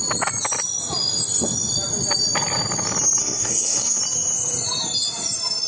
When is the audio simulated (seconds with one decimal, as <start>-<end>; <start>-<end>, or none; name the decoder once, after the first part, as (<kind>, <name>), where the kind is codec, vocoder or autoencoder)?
3.2-4.0 (codec, SNAC)